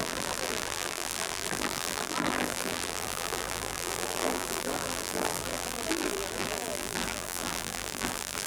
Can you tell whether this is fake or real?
fake